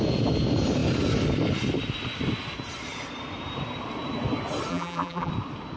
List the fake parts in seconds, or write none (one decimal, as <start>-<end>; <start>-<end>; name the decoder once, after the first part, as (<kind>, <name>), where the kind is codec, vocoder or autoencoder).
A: 4.7-5.3 (vocoder, BigVGAN v2)